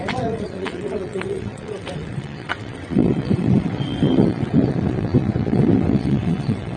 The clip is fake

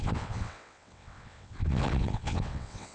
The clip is fake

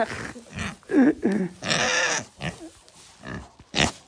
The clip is real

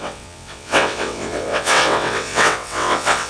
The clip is fake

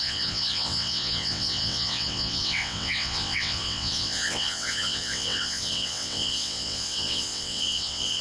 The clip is fake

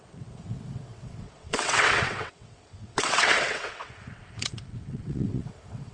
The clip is fake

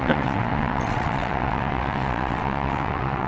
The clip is fake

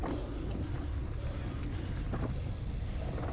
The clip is real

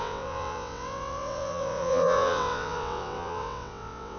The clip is fake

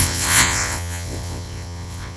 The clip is fake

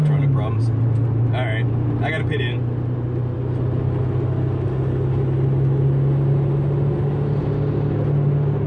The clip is real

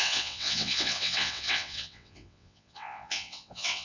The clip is fake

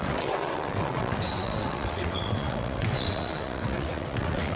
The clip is fake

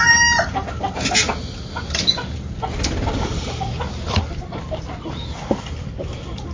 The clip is real